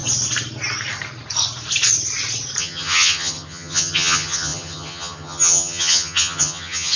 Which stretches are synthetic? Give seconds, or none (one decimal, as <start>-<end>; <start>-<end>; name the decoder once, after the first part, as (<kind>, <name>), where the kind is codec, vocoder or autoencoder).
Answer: 2.6-7.0 (vocoder, HiFi-GAN)